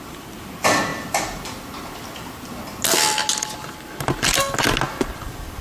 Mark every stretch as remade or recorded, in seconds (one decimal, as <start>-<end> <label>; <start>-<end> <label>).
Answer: 0.0-5.6 recorded